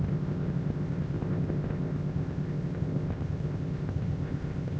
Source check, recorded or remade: remade